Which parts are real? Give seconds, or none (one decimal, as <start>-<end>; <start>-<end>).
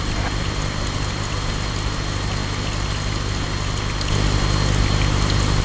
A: 0.0-5.6